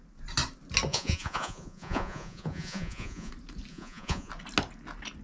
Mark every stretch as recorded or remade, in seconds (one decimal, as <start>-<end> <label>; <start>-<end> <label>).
0.0-0.9 recorded; 0.9-3.3 remade; 3.3-3.7 recorded; 3.7-4.3 remade; 4.3-5.2 recorded